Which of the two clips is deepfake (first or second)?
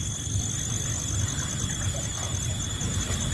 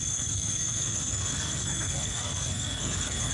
second